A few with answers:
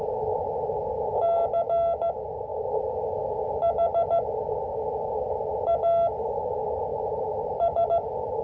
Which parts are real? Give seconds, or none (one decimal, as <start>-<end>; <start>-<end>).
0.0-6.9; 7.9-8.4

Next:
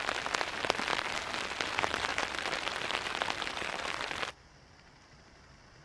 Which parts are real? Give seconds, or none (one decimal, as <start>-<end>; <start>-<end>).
0.9-1.7

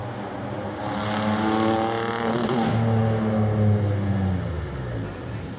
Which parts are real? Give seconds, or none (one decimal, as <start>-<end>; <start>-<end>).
0.0-5.6

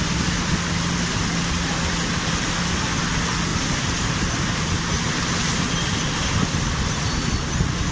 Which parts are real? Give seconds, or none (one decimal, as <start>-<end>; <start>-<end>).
0.0-3.5; 5.7-7.9

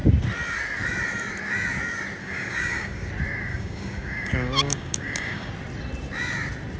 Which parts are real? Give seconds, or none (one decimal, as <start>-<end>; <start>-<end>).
0.0-2.2; 3.1-3.5; 5.5-6.8